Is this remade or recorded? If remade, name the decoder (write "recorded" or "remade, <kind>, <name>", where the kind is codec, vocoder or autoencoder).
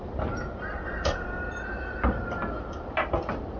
recorded